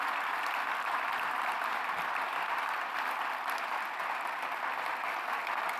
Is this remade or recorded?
recorded